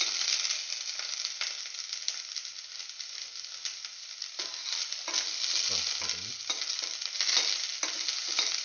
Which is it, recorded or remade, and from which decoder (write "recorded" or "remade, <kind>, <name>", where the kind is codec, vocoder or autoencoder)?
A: recorded